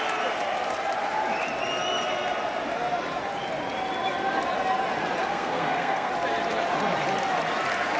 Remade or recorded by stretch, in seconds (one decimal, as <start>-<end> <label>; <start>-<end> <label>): 0.0-5.2 recorded; 5.2-6.1 remade; 6.1-8.0 recorded